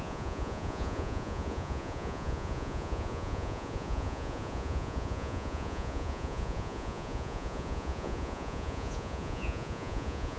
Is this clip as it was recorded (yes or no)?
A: no